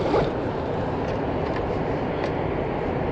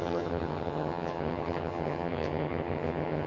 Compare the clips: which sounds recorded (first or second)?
first